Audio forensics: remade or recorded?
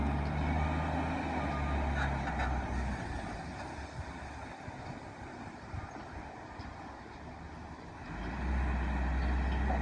recorded